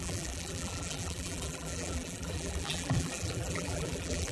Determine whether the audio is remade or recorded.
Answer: remade